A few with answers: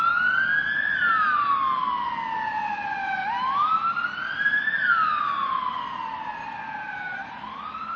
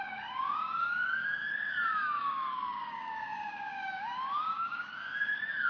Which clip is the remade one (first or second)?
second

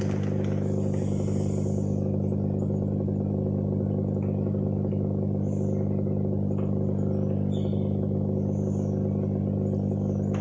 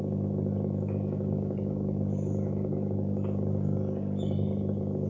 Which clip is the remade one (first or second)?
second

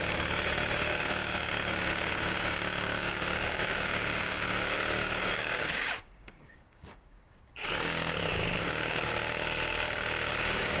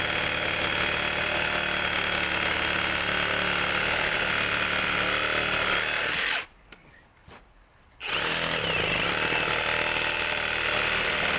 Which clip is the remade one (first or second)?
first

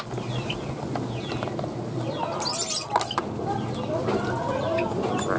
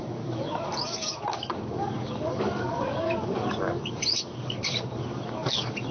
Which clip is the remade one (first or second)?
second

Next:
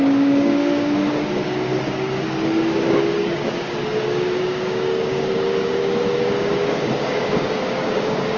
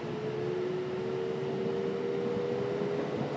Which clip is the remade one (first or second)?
first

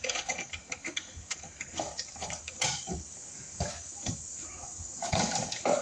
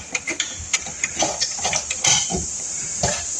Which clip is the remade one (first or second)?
first